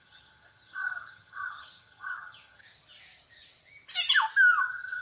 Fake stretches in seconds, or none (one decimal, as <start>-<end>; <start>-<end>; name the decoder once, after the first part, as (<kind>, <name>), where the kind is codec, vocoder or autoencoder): 0.0-2.6 (vocoder, HiFi-GAN); 4.6-5.0